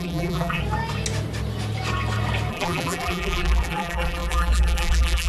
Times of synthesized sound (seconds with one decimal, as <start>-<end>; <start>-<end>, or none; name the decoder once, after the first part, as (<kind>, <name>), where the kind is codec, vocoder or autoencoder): 0.0-0.6 (vocoder, BigVGAN v2); 2.5-5.3